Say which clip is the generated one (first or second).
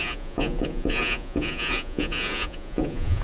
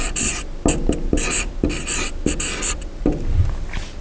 first